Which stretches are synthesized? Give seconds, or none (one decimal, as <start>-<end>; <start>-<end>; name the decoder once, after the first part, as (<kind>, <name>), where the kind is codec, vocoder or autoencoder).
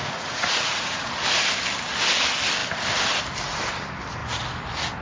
0.0-1.1 (vocoder, Vocos)